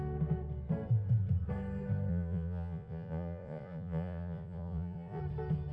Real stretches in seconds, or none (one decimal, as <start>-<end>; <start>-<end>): 0.0-2.1; 5.2-5.7